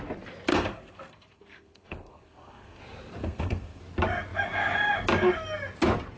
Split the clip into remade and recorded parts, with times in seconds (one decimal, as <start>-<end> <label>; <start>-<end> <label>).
0.0-0.5 recorded; 0.5-2.8 remade; 2.8-3.2 recorded; 3.2-3.8 remade; 3.8-6.2 recorded